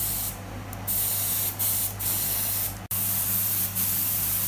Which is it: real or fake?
real